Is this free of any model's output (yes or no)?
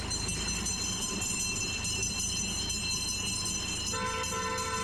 yes